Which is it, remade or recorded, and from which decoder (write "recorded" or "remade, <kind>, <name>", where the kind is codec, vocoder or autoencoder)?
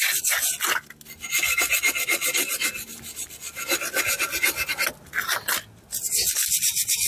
recorded